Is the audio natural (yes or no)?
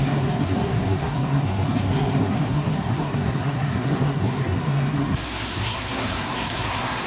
no